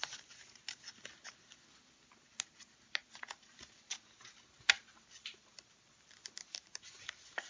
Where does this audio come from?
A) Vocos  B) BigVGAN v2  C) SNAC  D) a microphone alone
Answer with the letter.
D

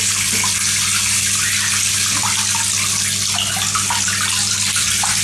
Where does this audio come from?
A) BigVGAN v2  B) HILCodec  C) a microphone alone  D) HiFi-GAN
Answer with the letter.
C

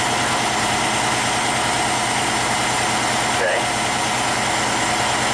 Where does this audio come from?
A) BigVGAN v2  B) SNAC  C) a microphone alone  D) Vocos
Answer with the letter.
C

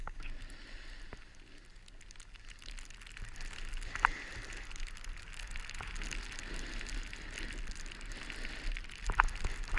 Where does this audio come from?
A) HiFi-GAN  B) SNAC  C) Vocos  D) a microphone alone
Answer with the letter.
D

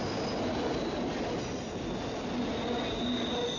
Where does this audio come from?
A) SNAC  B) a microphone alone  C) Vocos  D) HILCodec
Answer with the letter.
B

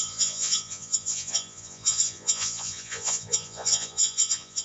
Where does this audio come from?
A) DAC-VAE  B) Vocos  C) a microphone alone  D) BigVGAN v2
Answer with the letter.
B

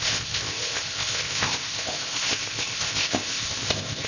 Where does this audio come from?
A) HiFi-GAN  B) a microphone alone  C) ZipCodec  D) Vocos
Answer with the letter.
C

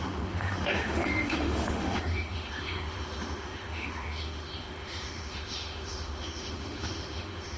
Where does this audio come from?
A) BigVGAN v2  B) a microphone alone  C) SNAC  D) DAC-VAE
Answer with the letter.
D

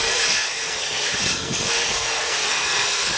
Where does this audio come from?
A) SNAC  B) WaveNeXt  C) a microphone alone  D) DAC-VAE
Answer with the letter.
A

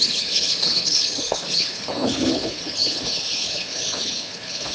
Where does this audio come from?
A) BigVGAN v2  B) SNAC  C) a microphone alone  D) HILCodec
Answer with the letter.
D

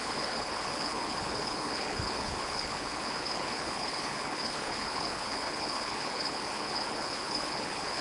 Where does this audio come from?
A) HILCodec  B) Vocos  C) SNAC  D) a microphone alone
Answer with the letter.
A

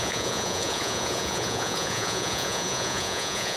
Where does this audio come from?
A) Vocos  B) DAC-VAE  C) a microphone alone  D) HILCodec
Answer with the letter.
A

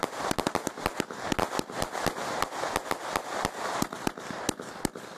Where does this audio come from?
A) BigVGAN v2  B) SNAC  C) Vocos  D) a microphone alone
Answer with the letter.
D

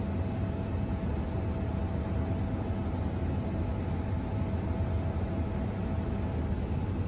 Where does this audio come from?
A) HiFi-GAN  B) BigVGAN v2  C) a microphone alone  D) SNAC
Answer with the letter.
C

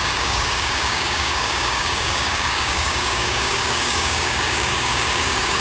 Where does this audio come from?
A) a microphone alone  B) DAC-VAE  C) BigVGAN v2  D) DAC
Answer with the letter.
D